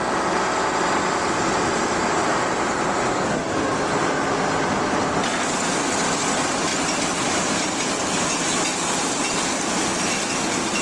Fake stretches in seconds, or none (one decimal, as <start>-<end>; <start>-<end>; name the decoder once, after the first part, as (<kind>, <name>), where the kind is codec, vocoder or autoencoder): 8.7-9.4 (vocoder, BigVGAN v2)